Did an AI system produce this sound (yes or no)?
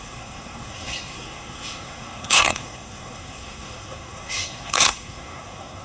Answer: yes